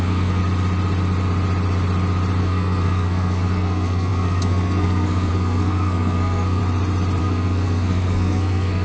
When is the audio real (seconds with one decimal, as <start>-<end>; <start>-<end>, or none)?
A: 0.4-2.4; 6.6-7.2